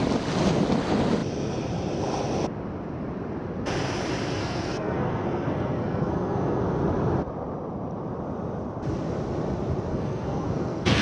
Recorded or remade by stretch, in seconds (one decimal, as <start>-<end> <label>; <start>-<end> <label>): 0.0-4.4 recorded; 4.4-6.8 remade; 6.8-9.9 recorded; 9.9-11.0 remade